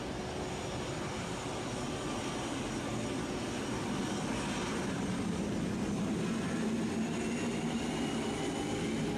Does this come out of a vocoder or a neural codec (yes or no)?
no